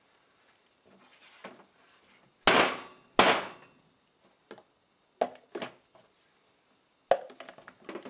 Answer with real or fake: real